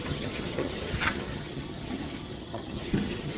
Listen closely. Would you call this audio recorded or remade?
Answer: remade